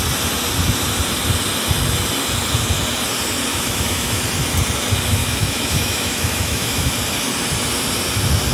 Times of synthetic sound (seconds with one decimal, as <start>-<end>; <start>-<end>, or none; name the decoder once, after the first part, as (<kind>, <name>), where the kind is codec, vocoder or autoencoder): 3.5-4.2 (autoencoder, DAC-VAE); 5.2-6.9